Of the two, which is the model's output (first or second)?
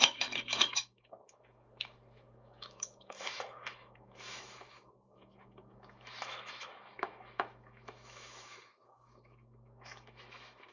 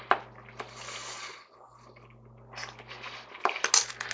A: first